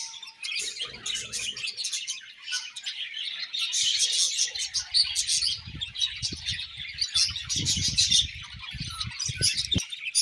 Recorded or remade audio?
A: recorded